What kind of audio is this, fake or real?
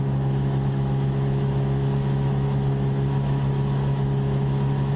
fake